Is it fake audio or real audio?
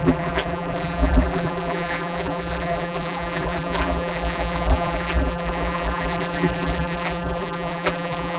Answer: fake